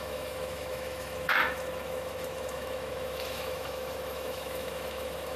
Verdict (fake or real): fake